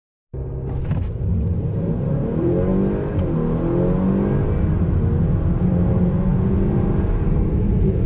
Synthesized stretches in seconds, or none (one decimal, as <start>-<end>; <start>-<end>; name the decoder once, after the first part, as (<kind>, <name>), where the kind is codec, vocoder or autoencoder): 1.6-2.7 (vocoder, BigVGAN v2); 5.6-8.1